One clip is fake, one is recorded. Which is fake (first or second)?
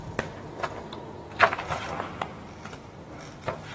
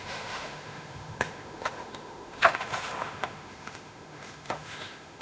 second